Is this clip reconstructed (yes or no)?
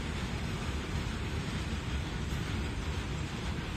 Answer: yes